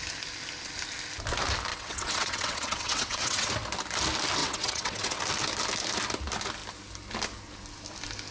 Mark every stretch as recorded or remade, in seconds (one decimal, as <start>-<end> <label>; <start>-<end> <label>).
0.0-1.7 recorded; 1.7-3.5 remade; 3.5-4.4 recorded; 4.4-5.2 remade; 5.2-8.3 recorded